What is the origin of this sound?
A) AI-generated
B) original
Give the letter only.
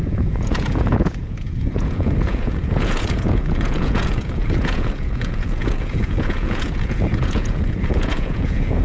A